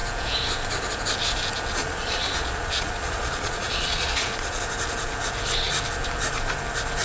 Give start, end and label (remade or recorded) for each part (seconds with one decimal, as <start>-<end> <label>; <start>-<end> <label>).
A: 0.0-1.7 recorded; 1.7-4.6 remade; 4.6-7.0 recorded